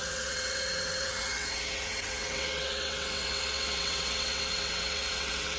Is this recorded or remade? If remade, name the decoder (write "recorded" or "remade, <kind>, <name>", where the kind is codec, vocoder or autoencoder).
remade, vocoder, WaveNeXt